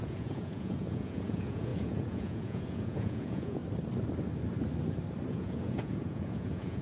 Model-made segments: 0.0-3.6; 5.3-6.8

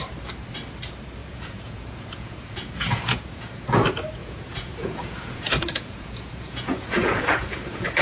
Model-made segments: 1.2-3.7; 4.2-8.0